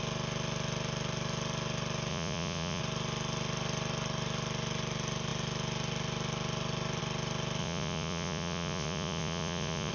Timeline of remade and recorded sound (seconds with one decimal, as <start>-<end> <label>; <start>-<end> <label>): 0.0-2.1 recorded; 2.1-2.8 remade; 2.8-7.6 recorded; 7.6-9.9 remade